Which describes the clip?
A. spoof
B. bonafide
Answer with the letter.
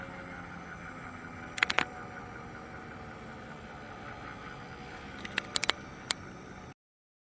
B